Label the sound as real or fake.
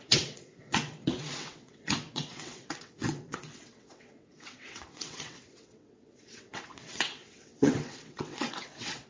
fake